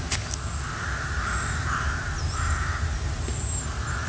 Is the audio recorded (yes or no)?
yes